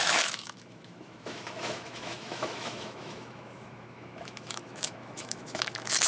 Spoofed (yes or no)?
yes